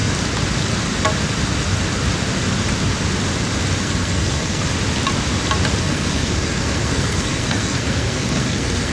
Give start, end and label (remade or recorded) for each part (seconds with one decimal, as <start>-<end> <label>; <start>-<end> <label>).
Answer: 0.0-3.8 recorded; 3.8-4.6 remade; 4.6-5.8 recorded; 5.8-8.9 remade